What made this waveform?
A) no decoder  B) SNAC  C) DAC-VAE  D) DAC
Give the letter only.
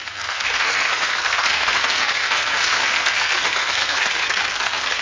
B